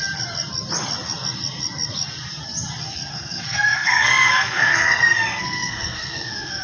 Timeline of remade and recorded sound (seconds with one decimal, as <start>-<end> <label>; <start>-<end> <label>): 0.0-3.1 recorded; 3.1-6.6 remade